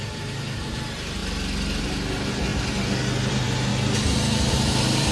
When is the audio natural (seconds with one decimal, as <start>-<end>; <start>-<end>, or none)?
1.2-1.8; 2.5-3.3; 3.7-4.5